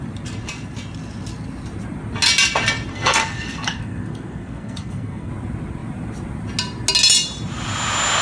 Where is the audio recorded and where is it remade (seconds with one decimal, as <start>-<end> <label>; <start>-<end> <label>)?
0.0-2.9 recorded; 2.9-5.3 remade; 5.3-8.2 recorded